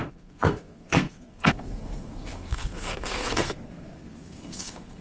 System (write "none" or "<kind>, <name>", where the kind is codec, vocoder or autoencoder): codec, SNAC